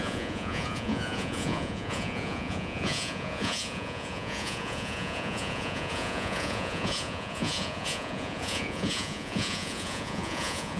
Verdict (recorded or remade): remade